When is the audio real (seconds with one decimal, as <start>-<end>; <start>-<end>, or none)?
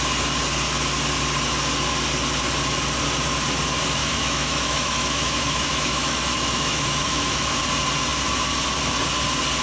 0.0-4.0; 7.6-9.6